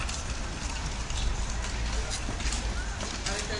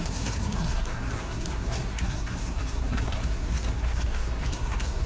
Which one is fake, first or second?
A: second